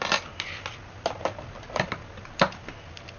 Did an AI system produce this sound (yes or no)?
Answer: no